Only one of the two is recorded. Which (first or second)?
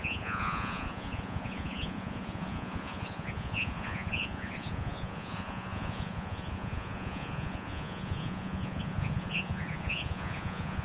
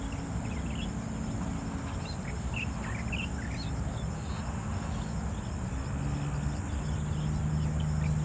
second